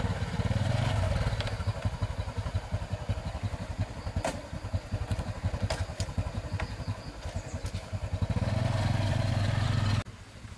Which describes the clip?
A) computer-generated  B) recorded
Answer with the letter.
B